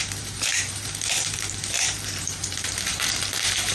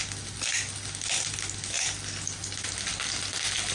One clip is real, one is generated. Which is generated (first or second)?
first